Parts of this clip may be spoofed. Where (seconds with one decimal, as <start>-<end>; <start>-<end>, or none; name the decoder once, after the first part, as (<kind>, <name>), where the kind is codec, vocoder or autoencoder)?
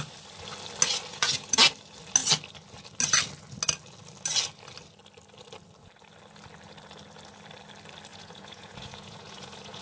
1.1-1.7 (vocoder, Vocos); 8.1-9.8